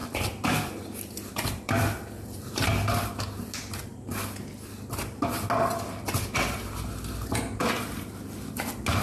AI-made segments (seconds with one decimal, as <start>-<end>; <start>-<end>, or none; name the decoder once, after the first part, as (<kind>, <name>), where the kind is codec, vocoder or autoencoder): 0.0-2.6 (vocoder, BigVGAN v2)

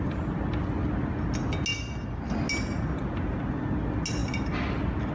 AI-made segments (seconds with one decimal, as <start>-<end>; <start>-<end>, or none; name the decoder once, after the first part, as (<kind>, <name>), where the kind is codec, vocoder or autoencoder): none

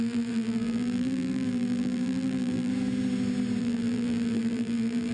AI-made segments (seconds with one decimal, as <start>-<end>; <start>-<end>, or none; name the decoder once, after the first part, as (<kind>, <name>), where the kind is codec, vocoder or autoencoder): 0.0-2.7 (vocoder, BigVGAN v2); 3.6-5.1

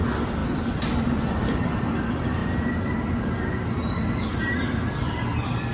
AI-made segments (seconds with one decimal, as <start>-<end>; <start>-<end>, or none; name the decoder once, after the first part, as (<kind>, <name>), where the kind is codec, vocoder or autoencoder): 0.0-0.4 (vocoder, BigVGAN v2); 1.2-2.4; 3.6-5.7

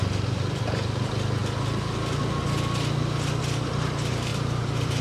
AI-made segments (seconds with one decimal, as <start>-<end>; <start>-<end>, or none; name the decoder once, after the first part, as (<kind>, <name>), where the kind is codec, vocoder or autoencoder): 0.0-1.4 (vocoder, BigVGAN v2); 3.4-5.0

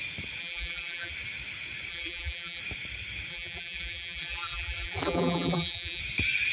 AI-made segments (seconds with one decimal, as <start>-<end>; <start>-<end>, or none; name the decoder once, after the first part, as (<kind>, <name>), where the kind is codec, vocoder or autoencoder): 0.4-1.1 (vocoder, BigVGAN v2); 1.9-2.6; 3.3-6.0

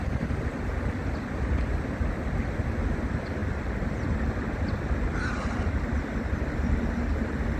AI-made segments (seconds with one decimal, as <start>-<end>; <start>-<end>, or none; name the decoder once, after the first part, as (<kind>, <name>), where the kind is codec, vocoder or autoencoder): none